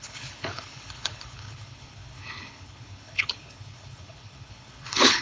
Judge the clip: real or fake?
fake